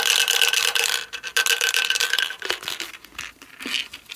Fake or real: real